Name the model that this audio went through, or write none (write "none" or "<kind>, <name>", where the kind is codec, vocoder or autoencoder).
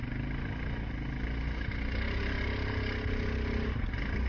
none